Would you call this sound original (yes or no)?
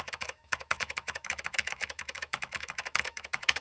no